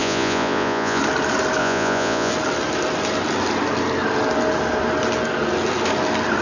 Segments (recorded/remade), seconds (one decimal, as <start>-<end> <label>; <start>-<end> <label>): 0.0-1.0 remade; 1.0-1.6 recorded; 1.6-2.3 remade; 2.3-6.4 recorded